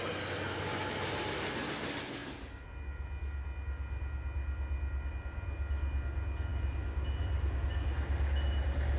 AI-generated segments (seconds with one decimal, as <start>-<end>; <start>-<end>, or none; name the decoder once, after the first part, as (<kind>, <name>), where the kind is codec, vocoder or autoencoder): none